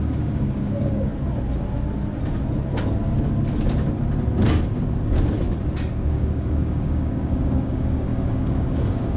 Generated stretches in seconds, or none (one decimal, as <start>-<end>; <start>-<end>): 0.0-1.1; 5.9-9.2